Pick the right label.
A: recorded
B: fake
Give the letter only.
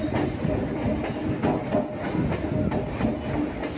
A